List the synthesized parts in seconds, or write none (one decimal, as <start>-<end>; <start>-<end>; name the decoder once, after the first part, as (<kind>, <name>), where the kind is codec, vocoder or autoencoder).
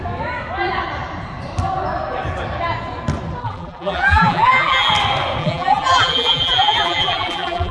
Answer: 3.4-4.9 (vocoder, BigVGAN v2); 5.4-7.7